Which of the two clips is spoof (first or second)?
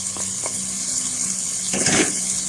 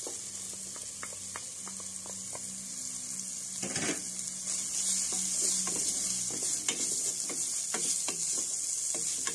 first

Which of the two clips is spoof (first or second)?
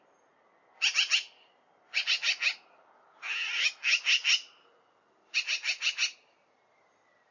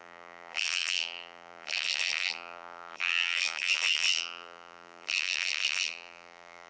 second